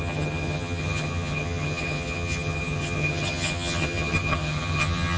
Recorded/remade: remade